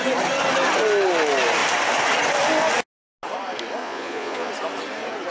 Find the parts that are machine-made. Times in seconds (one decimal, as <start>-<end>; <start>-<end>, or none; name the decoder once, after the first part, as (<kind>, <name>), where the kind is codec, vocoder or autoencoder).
3.8-4.5 (vocoder, Vocos)